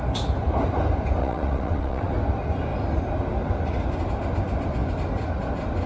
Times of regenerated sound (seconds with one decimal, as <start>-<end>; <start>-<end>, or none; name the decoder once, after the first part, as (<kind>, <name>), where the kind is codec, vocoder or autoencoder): 1.2-2.1 (vocoder, WaveNeXt)

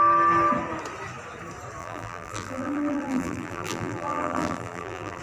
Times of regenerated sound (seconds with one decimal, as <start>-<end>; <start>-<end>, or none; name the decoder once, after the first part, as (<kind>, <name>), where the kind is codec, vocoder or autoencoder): 1.8-5.2 (vocoder, BigVGAN v2)

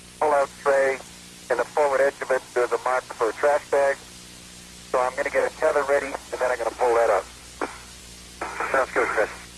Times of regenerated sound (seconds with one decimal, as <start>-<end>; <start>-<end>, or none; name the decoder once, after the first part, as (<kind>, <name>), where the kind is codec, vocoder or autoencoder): 5.4-6.5 (vocoder, Vocos)

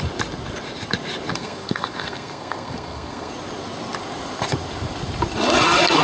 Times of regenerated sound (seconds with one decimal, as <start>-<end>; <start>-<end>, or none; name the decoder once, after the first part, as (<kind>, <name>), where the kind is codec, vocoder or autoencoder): 1.3-3.3 (codec, SNAC)

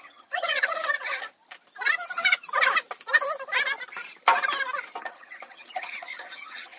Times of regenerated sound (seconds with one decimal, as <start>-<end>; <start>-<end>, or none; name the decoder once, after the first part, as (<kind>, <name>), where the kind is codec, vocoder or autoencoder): 0.0-1.4 (vocoder, HiFi-GAN); 5.0-6.8

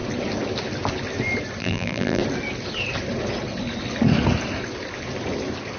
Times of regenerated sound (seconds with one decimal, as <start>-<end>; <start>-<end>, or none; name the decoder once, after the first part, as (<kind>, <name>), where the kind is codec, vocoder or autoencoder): 1.6-2.2 (vocoder, BigVGAN v2)